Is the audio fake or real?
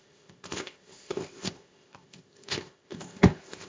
fake